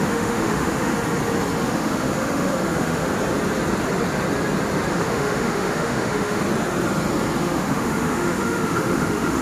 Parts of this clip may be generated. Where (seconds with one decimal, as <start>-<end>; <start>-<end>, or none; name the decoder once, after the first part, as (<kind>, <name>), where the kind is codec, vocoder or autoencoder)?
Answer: 0.0-0.9 (autoencoder, DAC-VAE); 1.6-3.1; 4.9-6.4; 7.4-9.4